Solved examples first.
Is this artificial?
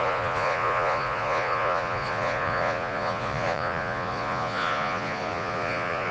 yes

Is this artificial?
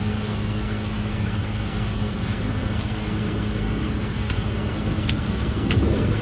yes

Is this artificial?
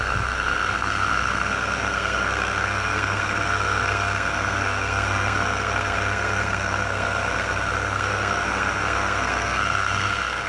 yes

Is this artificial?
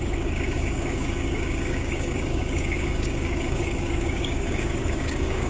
yes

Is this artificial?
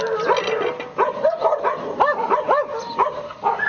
no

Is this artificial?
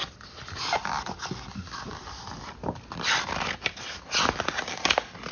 no